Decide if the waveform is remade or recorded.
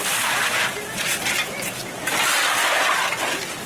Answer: recorded